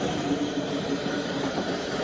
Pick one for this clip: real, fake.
fake